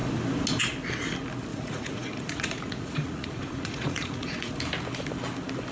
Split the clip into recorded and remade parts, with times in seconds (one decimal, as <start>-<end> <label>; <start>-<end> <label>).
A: 0.0-1.5 recorded; 1.5-4.5 remade; 4.5-5.7 recorded